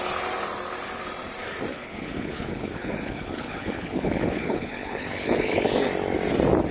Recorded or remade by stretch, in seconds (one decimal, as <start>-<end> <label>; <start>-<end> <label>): 0.0-1.7 recorded; 1.7-5.7 remade; 5.7-6.7 recorded